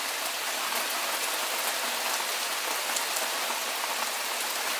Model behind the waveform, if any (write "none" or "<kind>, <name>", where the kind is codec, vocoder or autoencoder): none